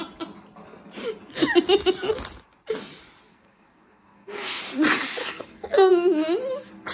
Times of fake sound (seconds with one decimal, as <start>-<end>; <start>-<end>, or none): 3.3-4.6; 5.2-5.9